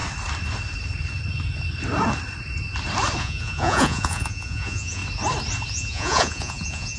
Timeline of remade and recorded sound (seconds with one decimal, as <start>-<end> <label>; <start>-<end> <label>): 0.0-3.2 recorded; 3.2-5.0 remade; 5.0-5.7 recorded; 5.7-7.0 remade